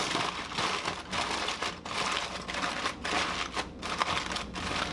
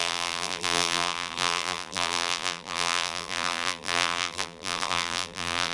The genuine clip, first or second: first